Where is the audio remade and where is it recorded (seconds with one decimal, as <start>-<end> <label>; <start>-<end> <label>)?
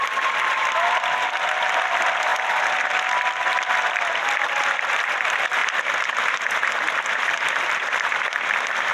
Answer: 0.0-2.3 remade; 2.3-3.3 recorded; 3.3-5.6 remade; 5.6-7.7 recorded; 7.7-8.9 remade